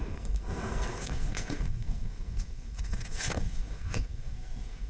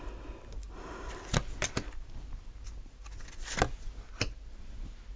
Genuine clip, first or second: second